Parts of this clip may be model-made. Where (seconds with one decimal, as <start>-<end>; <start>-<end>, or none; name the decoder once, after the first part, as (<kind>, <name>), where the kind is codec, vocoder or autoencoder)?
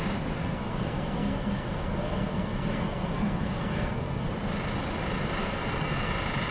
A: 0.4-4.3 (codec, SNAC); 5.4-6.1